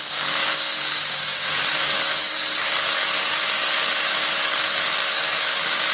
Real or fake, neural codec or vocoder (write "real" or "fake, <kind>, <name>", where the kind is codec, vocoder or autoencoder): fake, codec, DAC